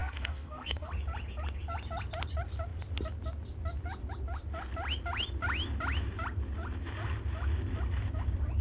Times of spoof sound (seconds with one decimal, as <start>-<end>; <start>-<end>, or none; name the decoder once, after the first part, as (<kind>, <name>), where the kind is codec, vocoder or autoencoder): 0.0-0.9 (codec, SNAC)